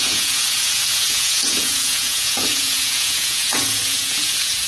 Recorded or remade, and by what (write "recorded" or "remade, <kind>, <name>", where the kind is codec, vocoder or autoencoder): remade, vocoder, Vocos